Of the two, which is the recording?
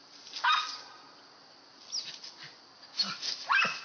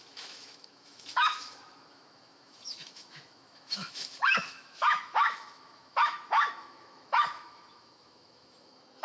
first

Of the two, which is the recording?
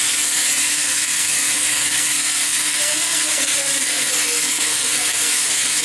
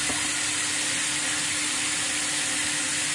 second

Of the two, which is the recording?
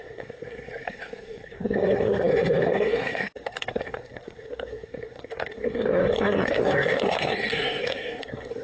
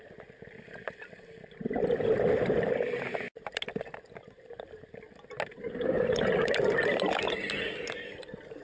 second